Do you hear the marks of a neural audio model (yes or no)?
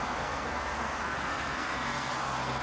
yes